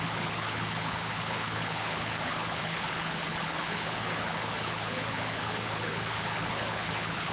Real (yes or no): no